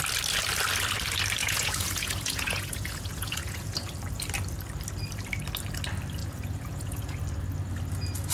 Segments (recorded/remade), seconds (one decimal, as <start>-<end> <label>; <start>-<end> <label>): 0.0-1.4 recorded; 1.4-3.9 remade; 3.9-6.2 recorded; 6.2-7.2 remade; 7.2-8.3 recorded